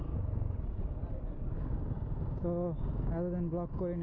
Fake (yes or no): no